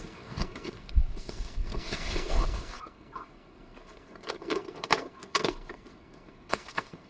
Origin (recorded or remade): remade